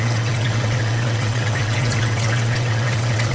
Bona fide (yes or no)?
no